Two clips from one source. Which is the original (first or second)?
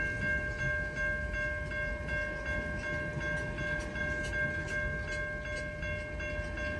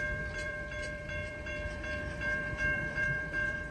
first